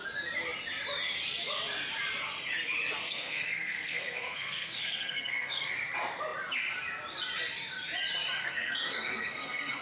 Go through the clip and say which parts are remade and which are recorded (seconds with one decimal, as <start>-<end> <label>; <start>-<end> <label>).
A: 0.0-3.0 recorded; 3.0-5.7 remade; 5.7-8.4 recorded; 8.4-9.8 remade